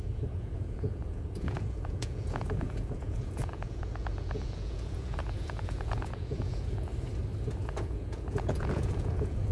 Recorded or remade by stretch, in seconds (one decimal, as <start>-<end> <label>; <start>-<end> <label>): 0.0-6.9 remade; 6.9-7.6 recorded; 7.6-9.5 remade